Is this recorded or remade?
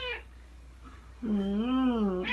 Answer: remade